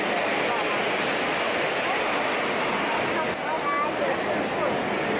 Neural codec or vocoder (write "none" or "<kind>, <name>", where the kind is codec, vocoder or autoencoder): none